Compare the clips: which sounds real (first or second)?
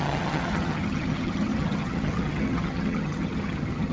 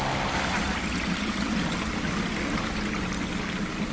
second